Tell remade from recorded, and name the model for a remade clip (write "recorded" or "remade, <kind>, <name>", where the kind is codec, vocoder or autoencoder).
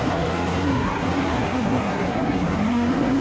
remade, codec, SNAC